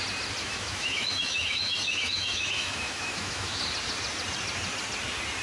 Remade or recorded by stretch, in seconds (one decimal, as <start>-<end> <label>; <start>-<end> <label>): 0.0-0.4 recorded; 0.4-3.6 remade; 3.6-5.4 recorded